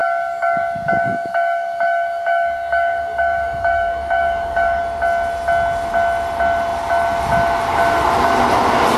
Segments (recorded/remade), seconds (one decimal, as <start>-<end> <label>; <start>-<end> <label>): 0.0-4.8 remade; 4.8-9.0 recorded